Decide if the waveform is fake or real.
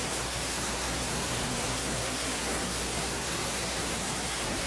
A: fake